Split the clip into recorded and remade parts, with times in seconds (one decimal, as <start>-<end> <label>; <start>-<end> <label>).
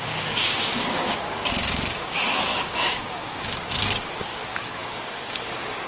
0.0-5.9 remade